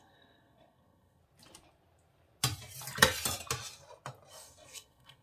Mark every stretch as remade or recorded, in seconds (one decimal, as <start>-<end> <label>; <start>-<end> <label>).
0.0-1.2 remade; 1.2-4.3 recorded; 4.3-5.2 remade